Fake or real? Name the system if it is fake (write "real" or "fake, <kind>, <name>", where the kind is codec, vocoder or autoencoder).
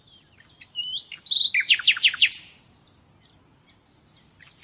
real